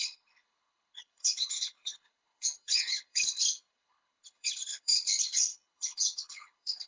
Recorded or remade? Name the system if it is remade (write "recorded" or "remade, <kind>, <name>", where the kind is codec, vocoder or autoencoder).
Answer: remade, codec, HILCodec